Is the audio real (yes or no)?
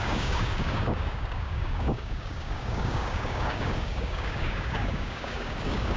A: no